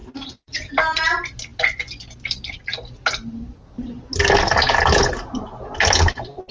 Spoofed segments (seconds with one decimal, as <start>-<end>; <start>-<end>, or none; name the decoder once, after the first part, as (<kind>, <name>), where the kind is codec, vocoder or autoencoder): 0.0-0.7 (vocoder, Vocos)